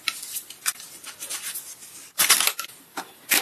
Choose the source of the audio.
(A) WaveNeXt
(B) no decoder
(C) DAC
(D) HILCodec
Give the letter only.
B